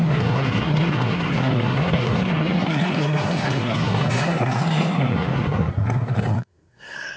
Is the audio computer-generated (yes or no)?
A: yes